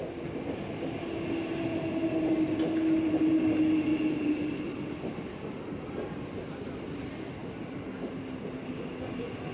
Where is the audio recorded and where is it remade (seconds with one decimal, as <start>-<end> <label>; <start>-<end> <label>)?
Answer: 0.0-3.9 recorded; 3.9-4.6 remade; 4.6-9.5 recorded